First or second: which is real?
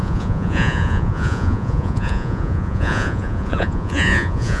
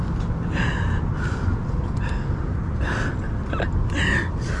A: second